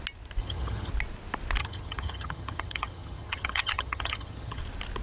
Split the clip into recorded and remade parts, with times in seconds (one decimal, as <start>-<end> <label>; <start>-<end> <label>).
0.0-0.4 recorded; 0.4-0.9 remade; 0.9-1.6 recorded; 1.6-4.6 remade; 4.6-5.0 recorded

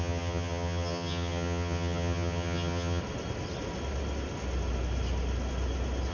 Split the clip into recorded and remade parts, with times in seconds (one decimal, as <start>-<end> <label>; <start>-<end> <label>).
0.0-3.0 remade; 3.0-6.1 recorded